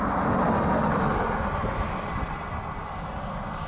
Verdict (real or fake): real